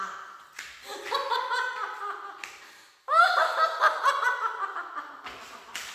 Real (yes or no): yes